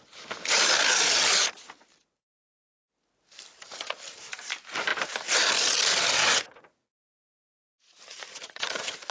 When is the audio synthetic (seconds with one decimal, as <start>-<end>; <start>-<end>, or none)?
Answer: 6.2-9.1